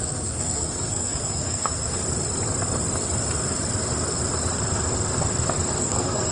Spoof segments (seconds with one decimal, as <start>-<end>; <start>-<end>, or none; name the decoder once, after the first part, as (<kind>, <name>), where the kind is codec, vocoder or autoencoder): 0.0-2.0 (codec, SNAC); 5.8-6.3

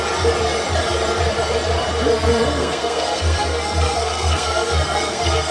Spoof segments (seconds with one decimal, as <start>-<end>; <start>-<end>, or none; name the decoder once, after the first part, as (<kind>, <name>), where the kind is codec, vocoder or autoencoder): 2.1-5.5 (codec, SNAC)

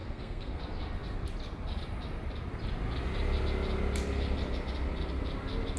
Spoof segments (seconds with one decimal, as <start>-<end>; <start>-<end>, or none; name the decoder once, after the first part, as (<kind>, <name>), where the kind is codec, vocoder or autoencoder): 0.0-0.6 (codec, SNAC)

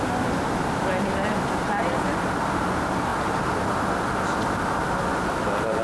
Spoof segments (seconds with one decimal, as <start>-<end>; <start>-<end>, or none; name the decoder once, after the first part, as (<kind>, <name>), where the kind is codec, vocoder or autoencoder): none

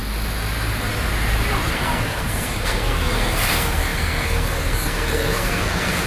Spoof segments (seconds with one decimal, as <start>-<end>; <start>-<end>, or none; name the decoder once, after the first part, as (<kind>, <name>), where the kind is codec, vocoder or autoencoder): 1.7-6.1 (codec, SNAC)

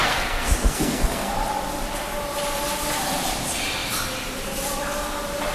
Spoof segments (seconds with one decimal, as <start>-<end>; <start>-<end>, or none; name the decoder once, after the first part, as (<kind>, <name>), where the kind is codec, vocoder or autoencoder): 0.0-1.3 (codec, SNAC)

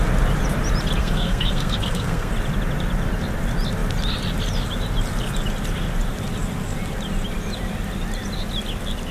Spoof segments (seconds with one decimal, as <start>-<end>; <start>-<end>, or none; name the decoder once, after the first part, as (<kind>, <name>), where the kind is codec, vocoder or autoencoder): 1.0-2.3 (codec, SNAC)